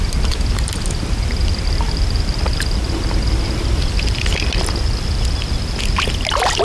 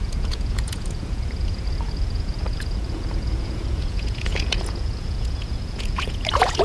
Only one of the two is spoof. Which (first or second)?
second